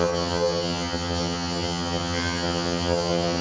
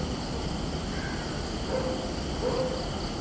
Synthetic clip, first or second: first